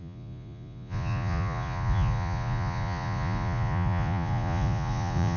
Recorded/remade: remade